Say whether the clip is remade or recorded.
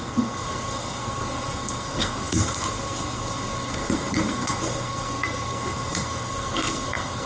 remade